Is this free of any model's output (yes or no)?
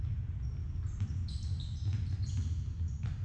yes